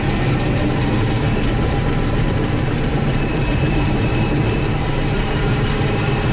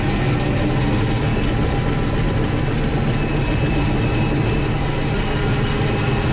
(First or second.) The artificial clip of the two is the first